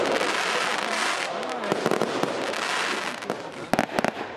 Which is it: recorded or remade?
recorded